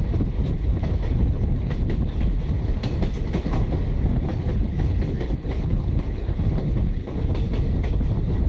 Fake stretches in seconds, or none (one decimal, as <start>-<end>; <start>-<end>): 0.7-2.4; 4.3-7.3